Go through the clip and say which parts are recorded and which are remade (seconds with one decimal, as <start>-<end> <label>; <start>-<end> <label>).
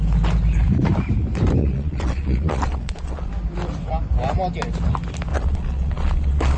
0.0-1.6 recorded; 1.6-3.3 remade; 3.3-5.3 recorded; 5.3-6.6 remade